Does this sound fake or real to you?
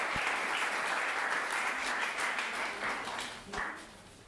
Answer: real